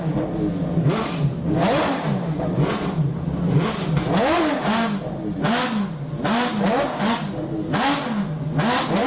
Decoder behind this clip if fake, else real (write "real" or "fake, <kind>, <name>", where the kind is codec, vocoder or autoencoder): real